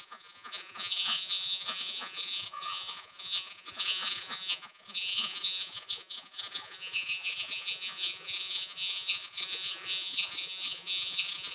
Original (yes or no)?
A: no